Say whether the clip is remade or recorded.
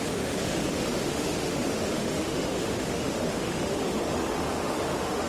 remade